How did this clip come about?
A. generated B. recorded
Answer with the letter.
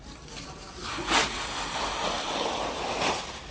B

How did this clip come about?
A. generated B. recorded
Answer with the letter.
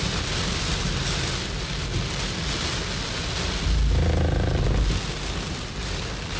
B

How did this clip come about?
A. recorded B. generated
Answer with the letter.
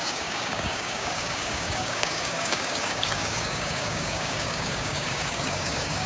B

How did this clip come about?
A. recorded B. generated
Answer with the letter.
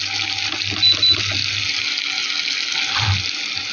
A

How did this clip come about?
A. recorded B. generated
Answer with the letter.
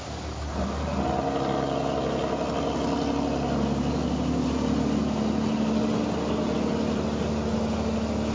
A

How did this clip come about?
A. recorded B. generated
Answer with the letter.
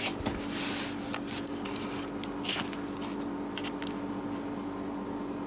A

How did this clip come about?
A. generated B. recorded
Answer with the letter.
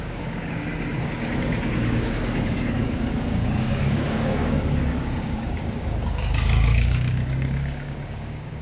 A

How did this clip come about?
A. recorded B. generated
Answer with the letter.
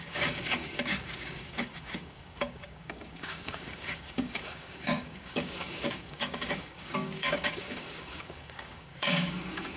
B